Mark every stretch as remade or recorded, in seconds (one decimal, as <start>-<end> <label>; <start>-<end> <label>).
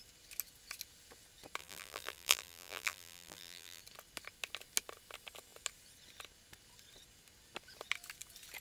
0.0-1.6 recorded; 1.6-3.8 remade; 3.8-8.6 recorded